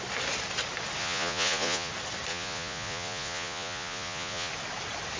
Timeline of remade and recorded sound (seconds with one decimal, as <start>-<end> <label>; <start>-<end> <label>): 0.0-1.0 recorded; 1.0-1.9 remade; 1.9-2.3 recorded; 2.3-4.5 remade; 4.5-5.2 recorded